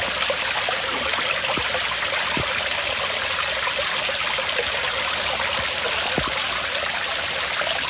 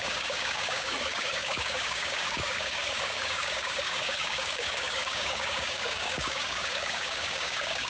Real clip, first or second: first